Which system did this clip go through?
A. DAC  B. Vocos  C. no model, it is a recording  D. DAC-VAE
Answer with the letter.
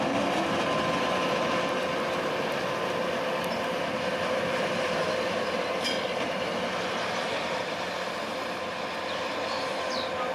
C